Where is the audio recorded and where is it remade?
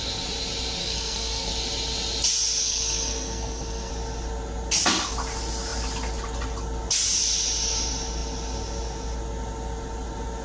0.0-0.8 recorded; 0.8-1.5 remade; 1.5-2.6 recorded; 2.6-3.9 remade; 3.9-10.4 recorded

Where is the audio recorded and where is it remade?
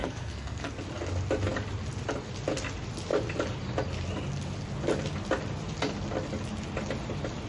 0.0-0.7 remade; 0.7-7.5 recorded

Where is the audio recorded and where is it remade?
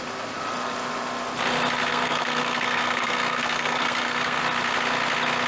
0.0-1.9 recorded; 1.9-4.4 remade; 4.4-5.5 recorded